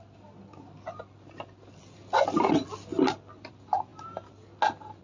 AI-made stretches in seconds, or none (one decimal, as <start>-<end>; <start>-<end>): none